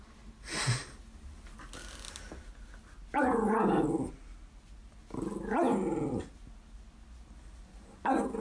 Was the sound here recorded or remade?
recorded